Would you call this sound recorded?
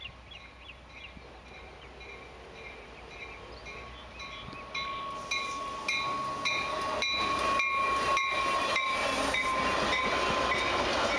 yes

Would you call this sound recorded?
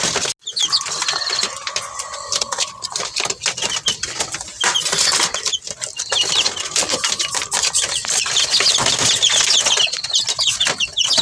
yes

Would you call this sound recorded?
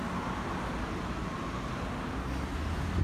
yes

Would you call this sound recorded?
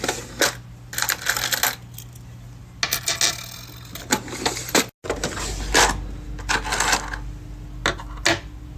yes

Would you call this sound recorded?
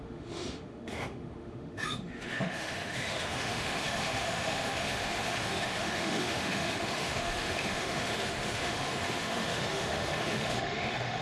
no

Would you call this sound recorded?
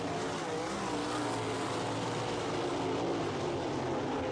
yes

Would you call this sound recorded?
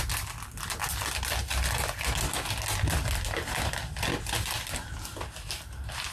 yes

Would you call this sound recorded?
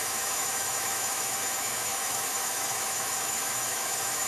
no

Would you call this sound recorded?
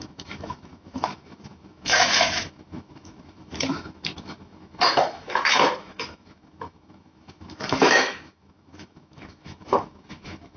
no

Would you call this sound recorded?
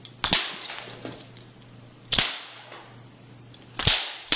yes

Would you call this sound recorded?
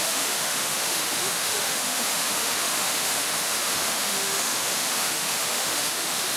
no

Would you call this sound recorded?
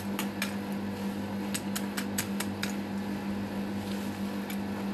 yes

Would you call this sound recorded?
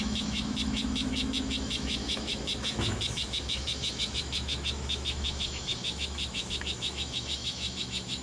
no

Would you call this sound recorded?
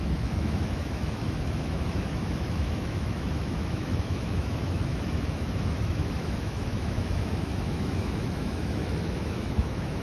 no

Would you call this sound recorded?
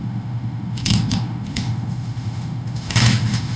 no